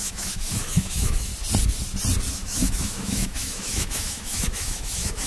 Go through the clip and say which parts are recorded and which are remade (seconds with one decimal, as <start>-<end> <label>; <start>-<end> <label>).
0.0-1.3 remade; 1.3-2.3 recorded; 2.3-5.3 remade